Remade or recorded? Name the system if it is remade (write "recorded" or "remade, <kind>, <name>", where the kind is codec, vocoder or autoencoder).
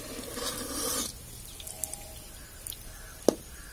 recorded